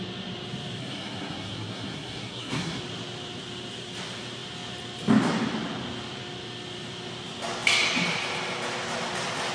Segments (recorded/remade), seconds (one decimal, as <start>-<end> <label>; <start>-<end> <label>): 0.0-0.8 recorded; 0.8-2.8 remade; 2.8-9.5 recorded